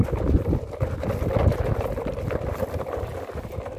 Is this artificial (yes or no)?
no